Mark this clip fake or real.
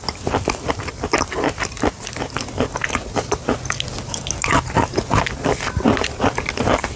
real